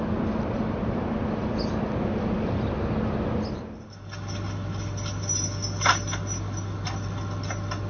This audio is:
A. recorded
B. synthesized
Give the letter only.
A